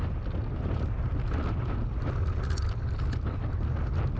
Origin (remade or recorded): recorded